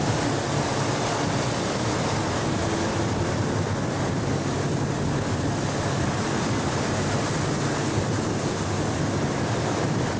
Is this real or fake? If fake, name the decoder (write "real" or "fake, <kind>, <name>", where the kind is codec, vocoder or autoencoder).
real